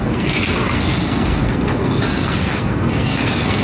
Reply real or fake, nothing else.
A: fake